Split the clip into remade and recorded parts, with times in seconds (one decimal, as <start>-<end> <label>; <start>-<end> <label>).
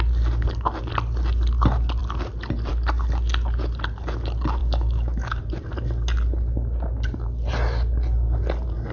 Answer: 0.0-4.6 recorded; 4.6-5.4 remade; 5.4-8.9 recorded